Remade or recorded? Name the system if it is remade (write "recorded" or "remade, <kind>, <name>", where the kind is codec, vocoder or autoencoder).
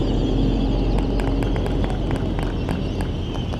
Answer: recorded